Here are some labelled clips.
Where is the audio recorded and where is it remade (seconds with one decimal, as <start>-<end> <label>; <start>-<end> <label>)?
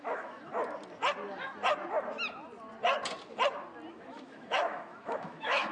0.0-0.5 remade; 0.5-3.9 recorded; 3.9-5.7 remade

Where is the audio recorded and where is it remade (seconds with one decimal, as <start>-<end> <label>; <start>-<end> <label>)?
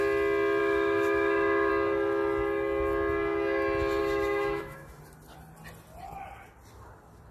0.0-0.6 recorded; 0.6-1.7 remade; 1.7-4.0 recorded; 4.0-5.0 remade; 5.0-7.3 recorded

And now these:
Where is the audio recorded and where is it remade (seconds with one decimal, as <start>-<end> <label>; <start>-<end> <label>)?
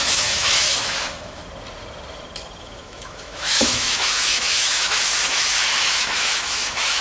0.0-1.4 remade; 1.4-2.6 recorded; 2.6-7.0 remade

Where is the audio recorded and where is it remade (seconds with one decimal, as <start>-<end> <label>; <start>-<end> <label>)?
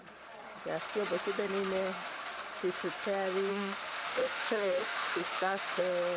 0.0-3.5 recorded; 3.5-5.8 remade; 5.8-6.2 recorded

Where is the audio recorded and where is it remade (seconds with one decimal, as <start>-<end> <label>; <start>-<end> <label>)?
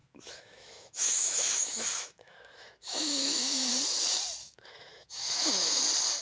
0.0-3.7 remade; 3.7-4.4 recorded; 4.4-5.8 remade; 5.8-6.2 recorded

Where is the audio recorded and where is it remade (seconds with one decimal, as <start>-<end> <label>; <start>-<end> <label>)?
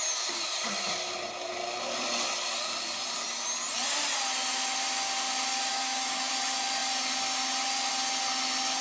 0.0-5.7 recorded; 5.7-6.3 remade; 6.3-8.8 recorded